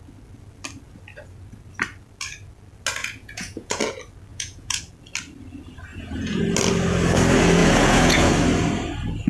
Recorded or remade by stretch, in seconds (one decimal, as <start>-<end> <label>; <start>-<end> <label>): 0.0-3.0 recorded; 3.0-3.8 remade; 3.8-4.3 recorded; 4.3-4.8 remade; 4.8-5.9 recorded; 5.9-6.4 remade; 6.4-7.6 recorded; 7.6-8.3 remade; 8.3-9.3 recorded